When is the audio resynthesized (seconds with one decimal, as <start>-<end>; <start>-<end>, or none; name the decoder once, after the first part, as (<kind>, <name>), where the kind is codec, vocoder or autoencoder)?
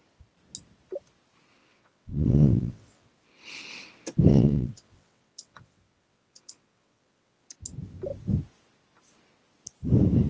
1.6-3.1 (vocoder, WaveNeXt); 4.3-7.4